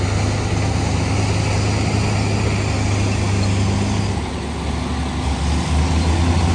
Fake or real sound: real